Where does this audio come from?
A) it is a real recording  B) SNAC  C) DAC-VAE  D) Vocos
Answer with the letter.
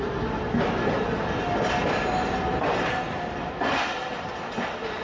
A